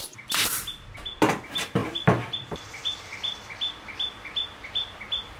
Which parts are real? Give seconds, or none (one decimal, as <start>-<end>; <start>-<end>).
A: 0.6-1.8; 5.0-5.4